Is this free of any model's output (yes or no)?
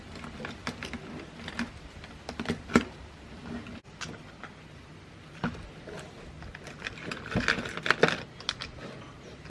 yes